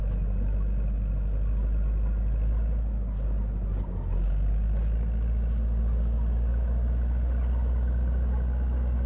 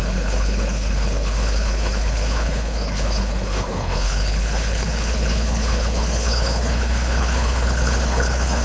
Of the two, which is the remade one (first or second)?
second